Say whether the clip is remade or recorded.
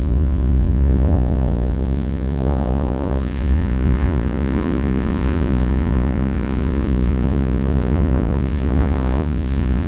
remade